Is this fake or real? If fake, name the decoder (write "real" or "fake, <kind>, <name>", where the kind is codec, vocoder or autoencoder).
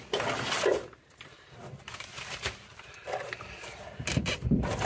fake, vocoder, BigVGAN v2